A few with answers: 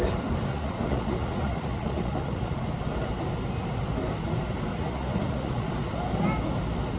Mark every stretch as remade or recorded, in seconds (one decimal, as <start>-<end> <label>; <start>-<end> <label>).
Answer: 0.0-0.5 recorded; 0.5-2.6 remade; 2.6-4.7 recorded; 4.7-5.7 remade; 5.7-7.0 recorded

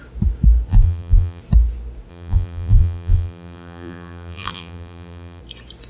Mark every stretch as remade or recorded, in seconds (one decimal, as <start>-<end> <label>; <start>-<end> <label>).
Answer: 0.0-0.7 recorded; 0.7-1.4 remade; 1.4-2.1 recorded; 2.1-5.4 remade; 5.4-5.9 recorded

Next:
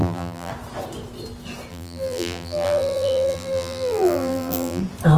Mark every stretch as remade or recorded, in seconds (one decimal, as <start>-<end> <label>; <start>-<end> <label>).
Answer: 0.0-0.5 remade; 0.5-1.7 recorded; 1.7-4.8 remade; 4.8-5.2 recorded